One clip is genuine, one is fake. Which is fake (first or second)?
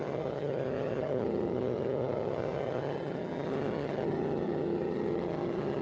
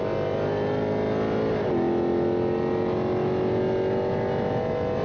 first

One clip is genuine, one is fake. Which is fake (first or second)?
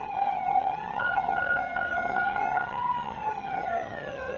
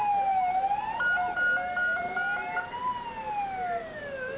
first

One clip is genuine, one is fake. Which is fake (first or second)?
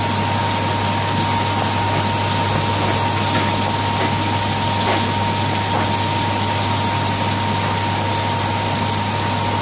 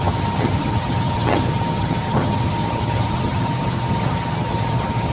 second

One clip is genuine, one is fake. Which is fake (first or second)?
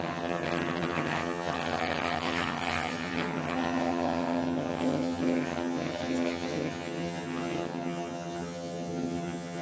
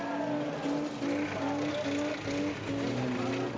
first